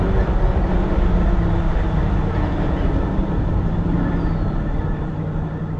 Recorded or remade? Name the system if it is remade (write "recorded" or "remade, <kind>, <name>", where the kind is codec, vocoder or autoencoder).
recorded